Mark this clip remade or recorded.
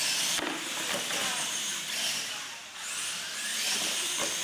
recorded